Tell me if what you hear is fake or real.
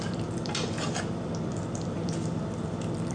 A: fake